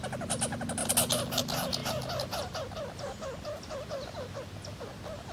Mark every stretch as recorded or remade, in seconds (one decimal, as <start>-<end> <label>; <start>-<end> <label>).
0.0-5.3 recorded